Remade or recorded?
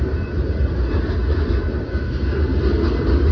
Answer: recorded